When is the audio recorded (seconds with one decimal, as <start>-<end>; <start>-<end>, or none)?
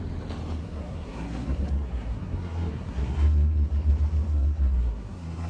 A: 0.0-0.6; 3.9-4.3